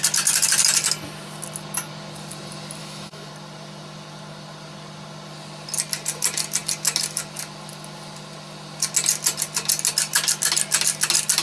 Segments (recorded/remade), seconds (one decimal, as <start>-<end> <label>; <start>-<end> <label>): 0.0-2.8 recorded; 2.8-3.3 remade; 3.3-11.4 recorded